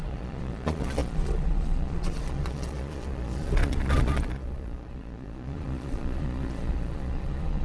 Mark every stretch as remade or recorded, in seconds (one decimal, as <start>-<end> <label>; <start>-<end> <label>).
0.0-7.6 remade